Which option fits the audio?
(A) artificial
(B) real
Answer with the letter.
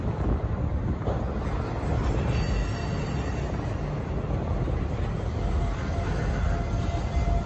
B